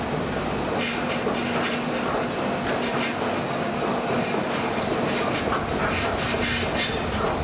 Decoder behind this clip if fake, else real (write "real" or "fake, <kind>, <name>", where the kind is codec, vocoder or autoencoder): real